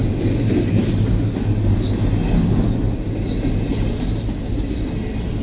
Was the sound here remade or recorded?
recorded